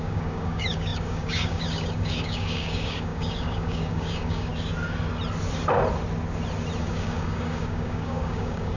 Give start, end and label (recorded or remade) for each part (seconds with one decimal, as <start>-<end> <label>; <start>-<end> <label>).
0.0-4.5 remade; 4.5-6.8 recorded; 6.8-8.8 remade